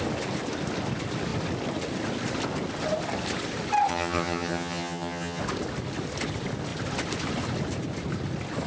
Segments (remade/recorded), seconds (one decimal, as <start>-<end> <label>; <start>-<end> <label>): 0.0-3.9 recorded; 3.9-5.4 remade; 5.4-8.7 recorded